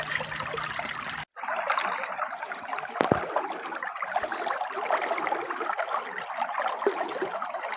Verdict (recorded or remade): recorded